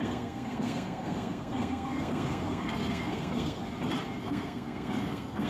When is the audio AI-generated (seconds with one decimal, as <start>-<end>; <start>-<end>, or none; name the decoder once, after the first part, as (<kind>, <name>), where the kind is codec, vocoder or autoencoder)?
0.0-3.6 (codec, SNAC); 4.2-5.5